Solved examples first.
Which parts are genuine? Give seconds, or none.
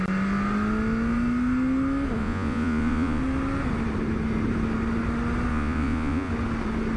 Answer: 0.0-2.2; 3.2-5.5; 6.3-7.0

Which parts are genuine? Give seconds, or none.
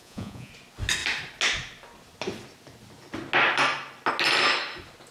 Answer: 0.5-5.1